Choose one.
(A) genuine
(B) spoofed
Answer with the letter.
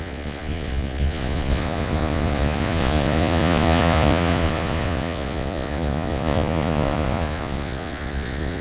B